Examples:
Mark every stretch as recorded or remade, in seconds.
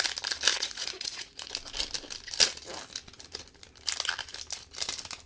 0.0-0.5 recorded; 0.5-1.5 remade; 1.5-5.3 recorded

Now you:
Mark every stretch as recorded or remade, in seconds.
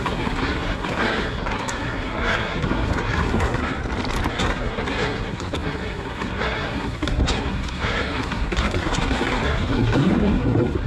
0.0-3.8 remade; 3.8-4.3 recorded; 4.3-10.9 remade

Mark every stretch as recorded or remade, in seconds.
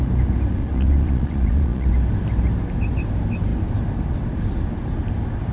0.0-0.6 recorded; 0.6-1.9 remade; 1.9-5.5 recorded